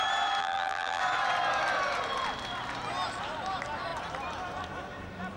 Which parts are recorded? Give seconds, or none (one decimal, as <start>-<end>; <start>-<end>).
0.0-0.4; 1.0-5.4